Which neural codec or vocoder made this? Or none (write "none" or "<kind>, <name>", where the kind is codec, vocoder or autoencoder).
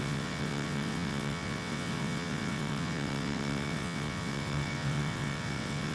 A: vocoder, WaveNeXt